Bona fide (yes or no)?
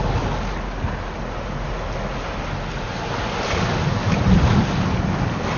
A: yes